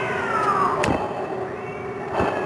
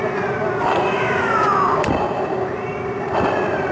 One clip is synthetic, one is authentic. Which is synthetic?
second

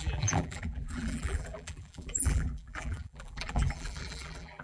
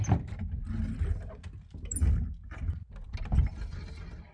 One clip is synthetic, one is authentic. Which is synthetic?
first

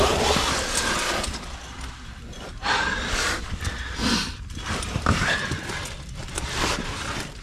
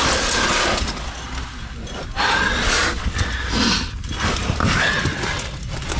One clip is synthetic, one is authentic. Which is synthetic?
first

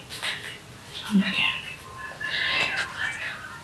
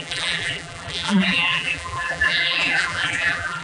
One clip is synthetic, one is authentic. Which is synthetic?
second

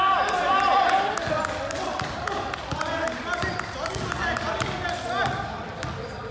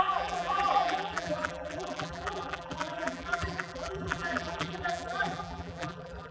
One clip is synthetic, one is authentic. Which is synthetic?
second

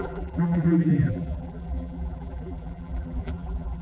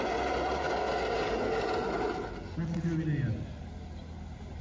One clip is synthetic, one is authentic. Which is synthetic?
first